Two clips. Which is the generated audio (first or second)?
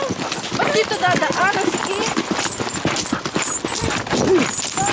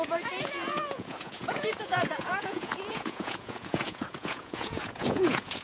second